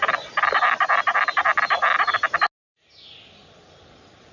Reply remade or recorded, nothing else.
recorded